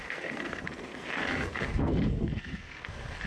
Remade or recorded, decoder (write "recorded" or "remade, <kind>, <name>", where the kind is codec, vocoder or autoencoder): remade, codec, SNAC